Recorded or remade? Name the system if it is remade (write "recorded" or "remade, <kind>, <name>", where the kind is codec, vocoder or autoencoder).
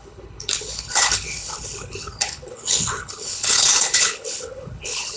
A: remade, codec, HILCodec